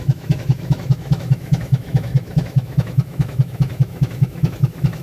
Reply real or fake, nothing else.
fake